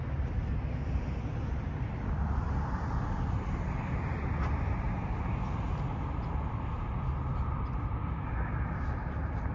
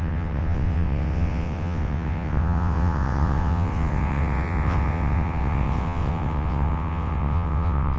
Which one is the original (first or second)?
first